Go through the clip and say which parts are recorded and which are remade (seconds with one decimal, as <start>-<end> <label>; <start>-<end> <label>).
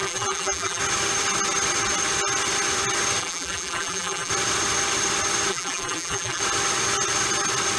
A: 0.0-0.8 remade; 0.8-3.2 recorded; 3.2-4.3 remade; 4.3-5.5 recorded; 5.5-6.4 remade; 6.4-7.8 recorded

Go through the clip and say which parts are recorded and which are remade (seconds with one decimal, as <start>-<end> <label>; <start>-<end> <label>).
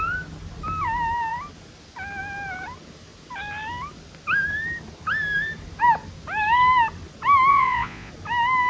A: 0.0-7.5 recorded; 7.5-8.1 remade; 8.1-8.7 recorded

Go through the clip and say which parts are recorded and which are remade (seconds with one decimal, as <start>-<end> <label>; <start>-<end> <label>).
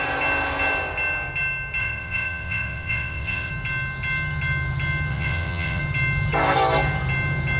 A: 0.0-1.8 recorded; 1.8-3.5 remade; 3.5-5.1 recorded; 5.1-5.8 remade; 5.8-7.6 recorded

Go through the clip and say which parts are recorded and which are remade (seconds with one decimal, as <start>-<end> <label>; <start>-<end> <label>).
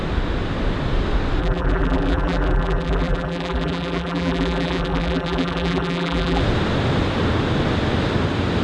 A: 0.0-1.4 recorded; 1.4-6.4 remade; 6.4-8.6 recorded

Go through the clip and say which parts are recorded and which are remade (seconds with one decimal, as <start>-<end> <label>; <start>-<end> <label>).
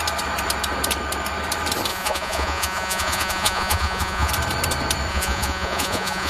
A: 0.0-1.9 recorded; 1.9-4.3 remade; 4.3-5.1 recorded; 5.1-6.3 remade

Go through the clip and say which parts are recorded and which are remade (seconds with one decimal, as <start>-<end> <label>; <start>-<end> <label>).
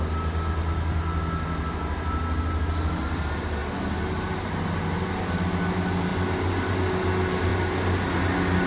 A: 0.0-8.7 recorded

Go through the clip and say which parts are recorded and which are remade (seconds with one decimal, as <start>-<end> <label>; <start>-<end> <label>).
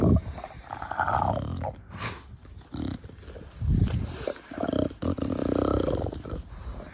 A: 0.0-6.9 recorded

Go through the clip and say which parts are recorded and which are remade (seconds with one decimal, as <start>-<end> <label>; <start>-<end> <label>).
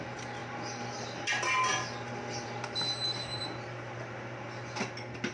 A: 0.0-5.3 recorded